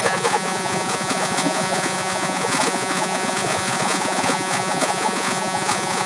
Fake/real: fake